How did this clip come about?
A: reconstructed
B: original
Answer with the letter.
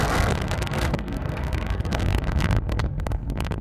A